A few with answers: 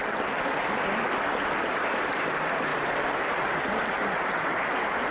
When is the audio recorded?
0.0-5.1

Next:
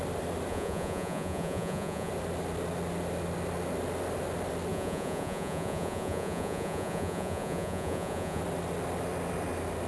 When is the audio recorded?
0.0-0.5; 2.1-4.7; 8.4-9.9

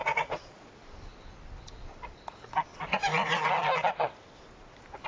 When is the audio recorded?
0.7-2.9; 3.5-5.1

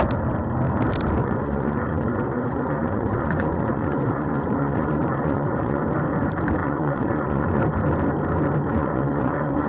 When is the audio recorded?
0.0-1.2; 5.8-6.6; 7.6-8.7